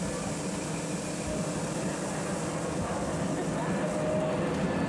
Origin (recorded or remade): recorded